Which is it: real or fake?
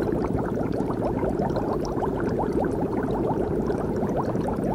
fake